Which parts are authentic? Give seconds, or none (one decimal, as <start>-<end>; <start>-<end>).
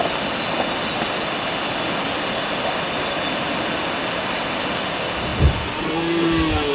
0.0-6.7